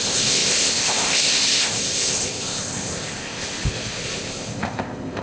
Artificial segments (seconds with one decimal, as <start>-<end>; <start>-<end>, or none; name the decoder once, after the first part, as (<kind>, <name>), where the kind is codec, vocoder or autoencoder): 0.0-5.2 (codec, ZipCodec)